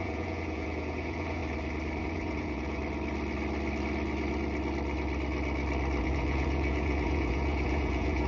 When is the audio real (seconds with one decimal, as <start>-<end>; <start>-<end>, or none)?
1.4-2.0; 2.8-6.0